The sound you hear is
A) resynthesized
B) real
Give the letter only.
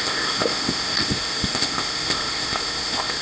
A